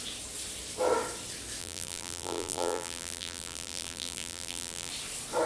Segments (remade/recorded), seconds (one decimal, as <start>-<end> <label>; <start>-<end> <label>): 0.0-1.6 recorded; 1.6-4.9 remade; 4.9-5.5 recorded